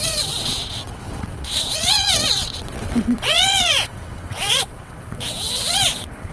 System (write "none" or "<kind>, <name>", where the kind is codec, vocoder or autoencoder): vocoder, WaveNeXt